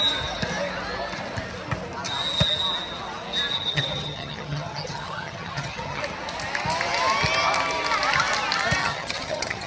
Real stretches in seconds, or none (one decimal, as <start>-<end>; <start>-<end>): 0.0-3.5; 6.0-8.8